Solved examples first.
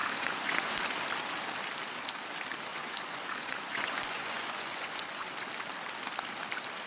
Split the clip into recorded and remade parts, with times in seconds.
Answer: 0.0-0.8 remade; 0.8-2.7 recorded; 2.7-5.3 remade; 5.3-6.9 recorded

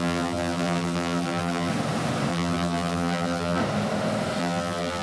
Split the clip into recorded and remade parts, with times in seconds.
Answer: 0.0-1.7 remade; 1.7-2.3 recorded; 2.3-3.6 remade; 3.6-4.4 recorded; 4.4-5.0 remade